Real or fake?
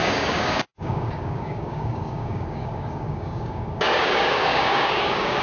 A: fake